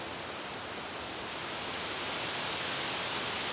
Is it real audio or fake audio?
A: real